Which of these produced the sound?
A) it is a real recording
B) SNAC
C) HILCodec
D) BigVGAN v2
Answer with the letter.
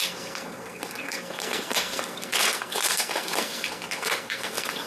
B